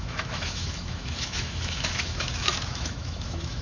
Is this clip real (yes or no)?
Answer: no